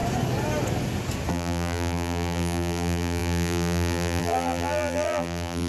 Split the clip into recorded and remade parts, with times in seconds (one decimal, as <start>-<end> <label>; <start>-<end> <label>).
0.0-1.3 recorded; 1.3-5.7 remade